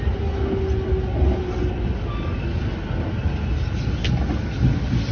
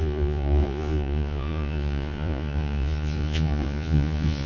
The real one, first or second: first